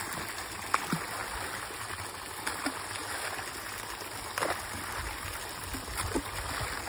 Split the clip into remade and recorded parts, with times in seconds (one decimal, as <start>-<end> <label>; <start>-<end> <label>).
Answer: 0.0-6.9 recorded